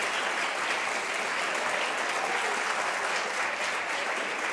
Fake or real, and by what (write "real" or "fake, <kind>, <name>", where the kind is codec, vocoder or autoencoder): real